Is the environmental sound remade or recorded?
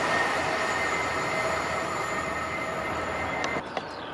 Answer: recorded